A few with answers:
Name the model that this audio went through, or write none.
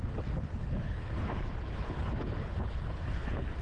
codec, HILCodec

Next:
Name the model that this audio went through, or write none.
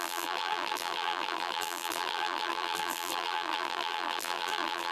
vocoder, BigVGAN v2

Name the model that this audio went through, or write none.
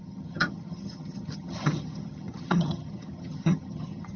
vocoder, HiFi-GAN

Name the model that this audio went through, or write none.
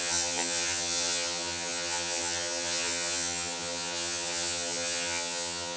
vocoder, HiFi-GAN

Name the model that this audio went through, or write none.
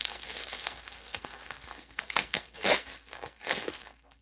codec, SNAC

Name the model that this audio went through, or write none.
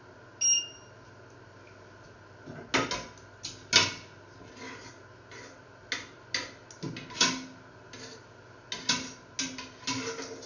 none